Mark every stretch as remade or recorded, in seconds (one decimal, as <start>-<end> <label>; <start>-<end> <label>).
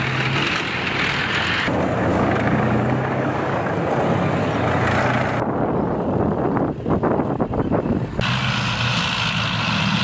0.0-2.1 recorded; 2.1-3.6 remade; 3.6-10.0 recorded